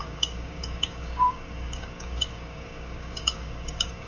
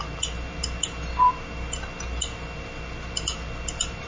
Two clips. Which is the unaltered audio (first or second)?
second